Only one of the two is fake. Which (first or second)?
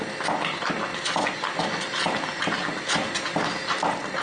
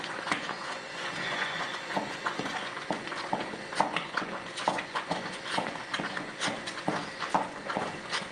second